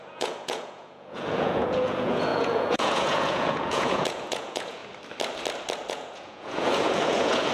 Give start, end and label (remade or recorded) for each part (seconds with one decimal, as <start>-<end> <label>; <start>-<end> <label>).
0.0-4.8 remade; 4.8-5.9 recorded; 5.9-7.5 remade